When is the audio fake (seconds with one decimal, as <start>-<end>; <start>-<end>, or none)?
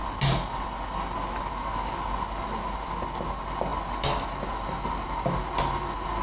none